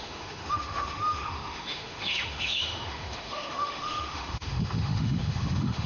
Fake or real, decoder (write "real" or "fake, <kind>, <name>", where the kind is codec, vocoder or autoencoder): fake, autoencoder, DAC-VAE